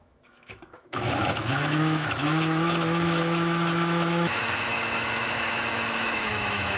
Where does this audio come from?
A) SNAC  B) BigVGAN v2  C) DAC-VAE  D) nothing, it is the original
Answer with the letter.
C